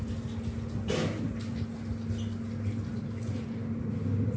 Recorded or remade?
recorded